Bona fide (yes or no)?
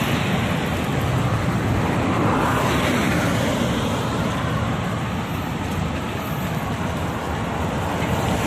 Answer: yes